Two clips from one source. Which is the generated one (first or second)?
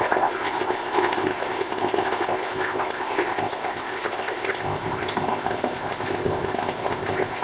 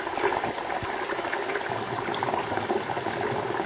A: first